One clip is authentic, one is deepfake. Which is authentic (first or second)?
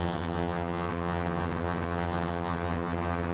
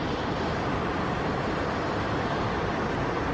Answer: second